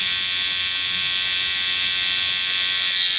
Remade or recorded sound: recorded